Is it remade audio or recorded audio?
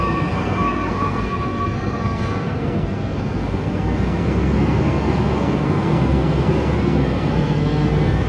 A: remade